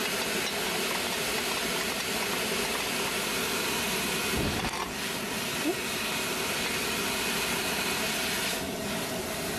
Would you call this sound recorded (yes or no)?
yes